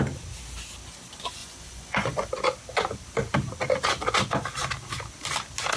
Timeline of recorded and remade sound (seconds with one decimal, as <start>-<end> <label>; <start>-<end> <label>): 0.0-1.4 recorded; 1.4-2.3 remade; 2.3-5.8 recorded